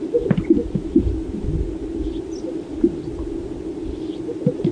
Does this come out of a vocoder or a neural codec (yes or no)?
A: no